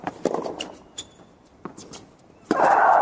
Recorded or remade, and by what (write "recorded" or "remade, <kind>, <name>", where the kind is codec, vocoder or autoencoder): remade, vocoder, BigVGAN v2